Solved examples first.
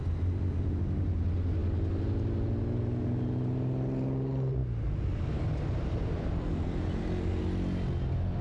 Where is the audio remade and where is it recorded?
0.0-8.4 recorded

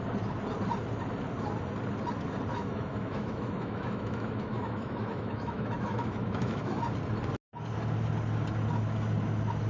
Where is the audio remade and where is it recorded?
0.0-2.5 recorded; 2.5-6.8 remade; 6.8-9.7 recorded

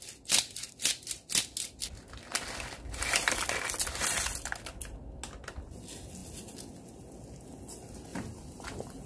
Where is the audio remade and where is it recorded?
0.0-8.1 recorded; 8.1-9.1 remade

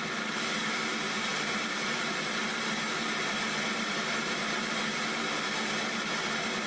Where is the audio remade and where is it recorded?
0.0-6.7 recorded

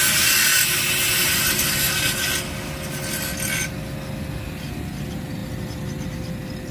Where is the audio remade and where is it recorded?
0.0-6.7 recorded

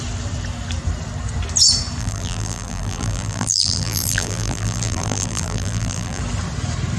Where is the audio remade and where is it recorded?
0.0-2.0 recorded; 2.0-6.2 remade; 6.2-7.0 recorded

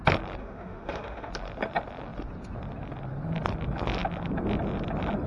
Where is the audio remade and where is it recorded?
0.0-0.4 recorded; 0.4-1.3 remade; 1.3-5.3 recorded